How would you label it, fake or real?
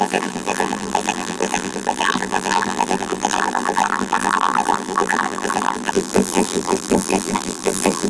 fake